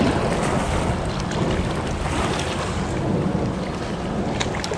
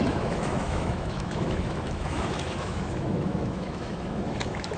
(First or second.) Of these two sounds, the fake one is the second